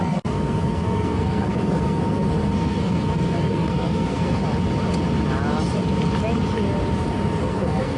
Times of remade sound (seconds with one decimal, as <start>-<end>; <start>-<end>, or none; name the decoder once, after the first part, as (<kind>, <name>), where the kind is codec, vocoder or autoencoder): 0.0-4.4 (codec, SNAC); 7.4-8.0